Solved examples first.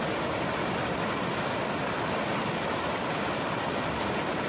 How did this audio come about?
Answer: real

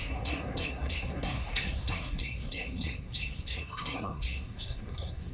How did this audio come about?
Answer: fake